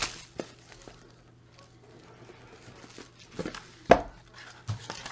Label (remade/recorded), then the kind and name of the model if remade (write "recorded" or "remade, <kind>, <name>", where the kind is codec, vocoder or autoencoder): recorded